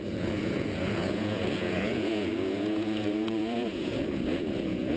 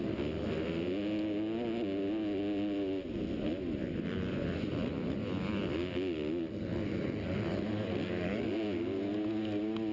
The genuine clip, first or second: second